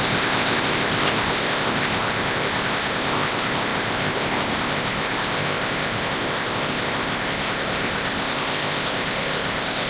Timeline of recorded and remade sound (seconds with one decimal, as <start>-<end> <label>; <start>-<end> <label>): 0.0-9.9 remade